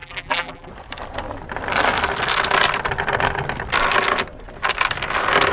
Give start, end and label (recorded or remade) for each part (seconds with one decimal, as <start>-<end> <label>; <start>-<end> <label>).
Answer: 0.0-0.7 remade; 0.7-5.5 recorded